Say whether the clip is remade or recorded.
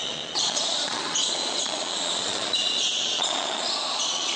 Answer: remade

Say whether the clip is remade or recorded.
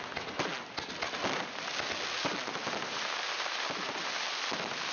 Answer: recorded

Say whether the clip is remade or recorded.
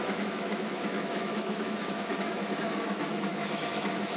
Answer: remade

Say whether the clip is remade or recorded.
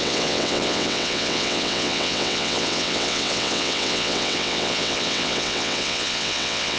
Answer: remade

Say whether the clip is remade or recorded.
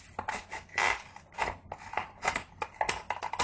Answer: recorded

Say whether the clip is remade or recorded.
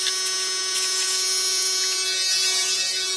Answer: recorded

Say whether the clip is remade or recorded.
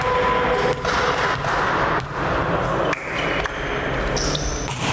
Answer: recorded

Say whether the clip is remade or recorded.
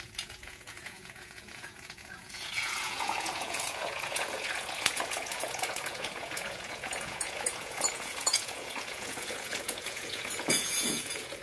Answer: remade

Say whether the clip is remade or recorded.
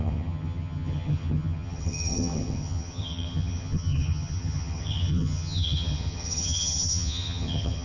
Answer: remade